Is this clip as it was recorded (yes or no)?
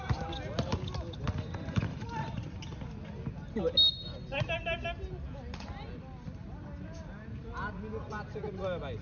yes